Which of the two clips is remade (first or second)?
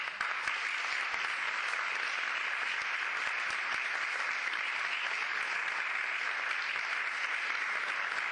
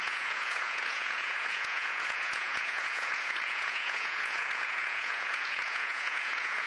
second